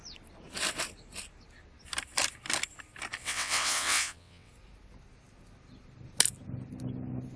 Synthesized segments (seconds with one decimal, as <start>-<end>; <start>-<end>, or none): 3.2-4.5

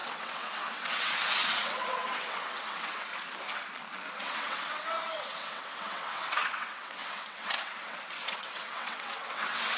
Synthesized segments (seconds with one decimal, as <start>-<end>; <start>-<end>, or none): 0.0-3.1; 4.1-9.8

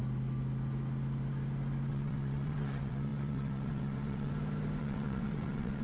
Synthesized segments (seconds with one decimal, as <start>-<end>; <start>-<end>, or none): 1.9-4.3; 4.8-5.8

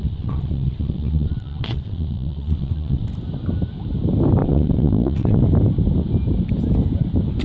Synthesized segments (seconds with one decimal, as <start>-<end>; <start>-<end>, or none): 0.0-3.0; 4.4-5.4